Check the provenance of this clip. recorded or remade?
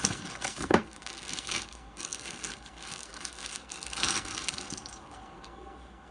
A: remade